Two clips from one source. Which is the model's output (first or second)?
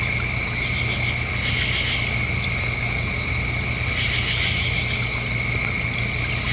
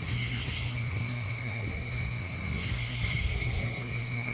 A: second